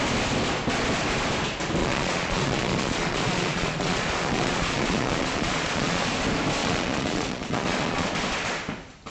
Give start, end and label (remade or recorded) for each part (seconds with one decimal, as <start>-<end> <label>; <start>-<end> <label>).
0.0-1.8 recorded; 1.8-6.1 remade; 6.1-6.6 recorded; 6.6-8.1 remade; 8.1-9.1 recorded